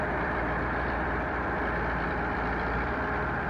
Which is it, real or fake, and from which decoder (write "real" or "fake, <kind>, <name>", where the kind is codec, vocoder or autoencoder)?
fake, vocoder, BigVGAN v2